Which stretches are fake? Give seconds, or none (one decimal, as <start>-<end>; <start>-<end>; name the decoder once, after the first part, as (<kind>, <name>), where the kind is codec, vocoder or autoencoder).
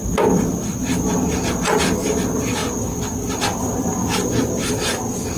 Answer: none